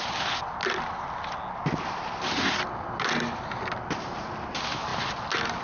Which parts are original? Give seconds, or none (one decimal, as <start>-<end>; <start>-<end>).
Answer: 0.0-5.6